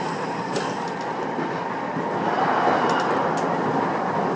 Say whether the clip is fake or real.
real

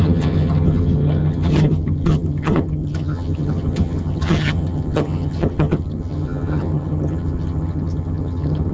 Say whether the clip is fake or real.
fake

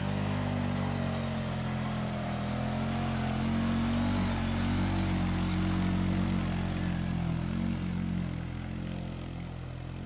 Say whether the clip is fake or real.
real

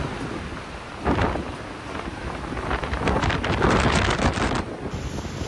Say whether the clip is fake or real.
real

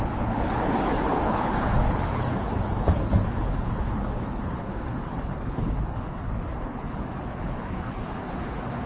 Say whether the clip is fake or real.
fake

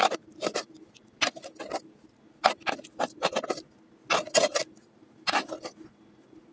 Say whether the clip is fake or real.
real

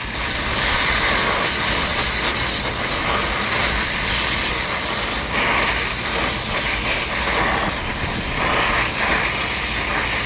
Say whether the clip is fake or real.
real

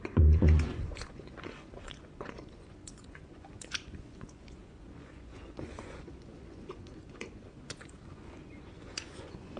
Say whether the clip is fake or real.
fake